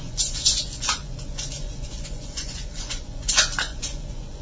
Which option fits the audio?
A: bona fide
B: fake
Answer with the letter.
B